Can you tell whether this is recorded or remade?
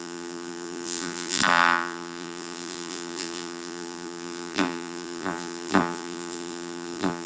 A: remade